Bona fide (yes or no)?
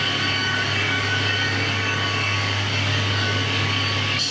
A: no